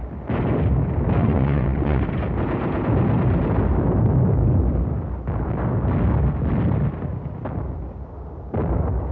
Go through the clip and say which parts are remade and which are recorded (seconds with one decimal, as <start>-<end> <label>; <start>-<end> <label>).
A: 0.0-1.2 recorded; 1.2-2.0 remade; 2.0-9.1 recorded